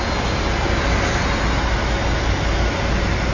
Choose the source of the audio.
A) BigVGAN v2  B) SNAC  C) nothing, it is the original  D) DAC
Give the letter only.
C